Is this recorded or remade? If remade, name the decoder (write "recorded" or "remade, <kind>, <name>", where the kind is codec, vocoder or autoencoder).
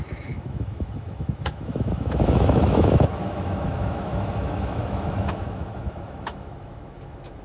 remade, autoencoder, DAC-VAE